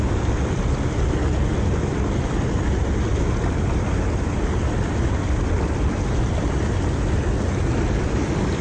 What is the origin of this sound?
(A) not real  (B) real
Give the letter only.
B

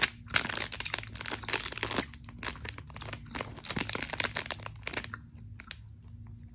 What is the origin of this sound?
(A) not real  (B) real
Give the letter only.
B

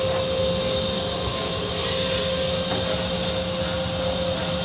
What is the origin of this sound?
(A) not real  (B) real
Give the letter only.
B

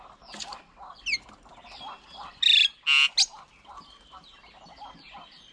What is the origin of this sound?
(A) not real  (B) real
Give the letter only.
B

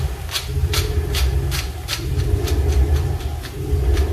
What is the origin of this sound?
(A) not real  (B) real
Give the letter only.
B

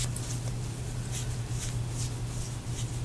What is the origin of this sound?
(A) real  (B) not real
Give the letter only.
A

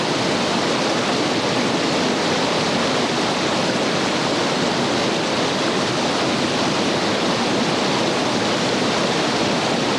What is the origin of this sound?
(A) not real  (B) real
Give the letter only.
B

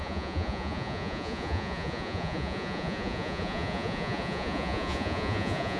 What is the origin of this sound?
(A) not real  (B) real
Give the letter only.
A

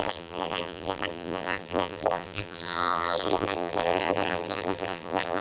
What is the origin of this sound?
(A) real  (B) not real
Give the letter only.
B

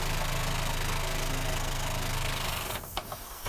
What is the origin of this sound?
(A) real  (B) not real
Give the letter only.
B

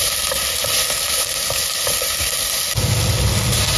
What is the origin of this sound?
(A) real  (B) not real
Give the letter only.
A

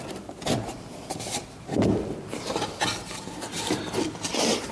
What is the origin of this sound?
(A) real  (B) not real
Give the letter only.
B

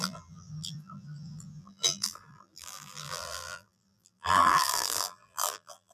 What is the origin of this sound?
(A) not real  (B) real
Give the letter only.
A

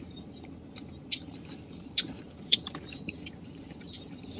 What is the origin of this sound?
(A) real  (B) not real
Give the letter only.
B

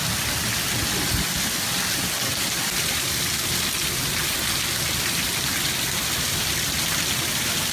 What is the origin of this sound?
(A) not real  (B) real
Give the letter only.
B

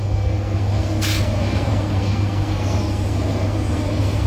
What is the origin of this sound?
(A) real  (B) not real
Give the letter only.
B